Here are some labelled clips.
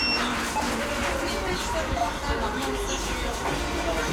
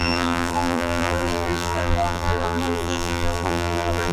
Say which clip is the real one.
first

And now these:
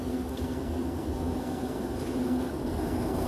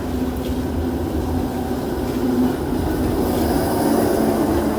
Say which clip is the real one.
second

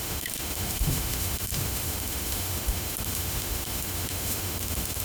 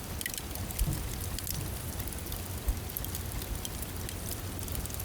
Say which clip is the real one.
second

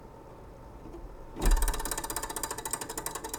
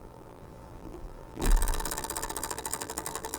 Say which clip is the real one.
first